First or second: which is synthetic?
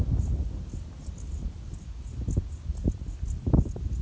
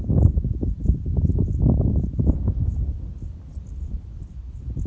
second